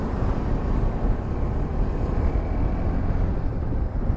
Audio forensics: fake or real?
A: real